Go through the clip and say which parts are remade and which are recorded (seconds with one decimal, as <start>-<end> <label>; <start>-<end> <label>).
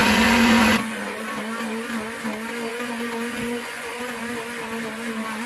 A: 0.0-1.4 remade; 1.4-2.7 recorded; 2.7-4.2 remade; 4.2-5.5 recorded